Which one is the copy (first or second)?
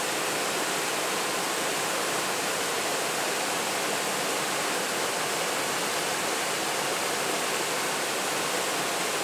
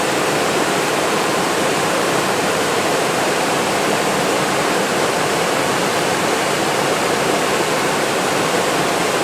second